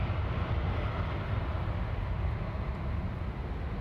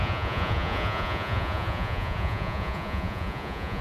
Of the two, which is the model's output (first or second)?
second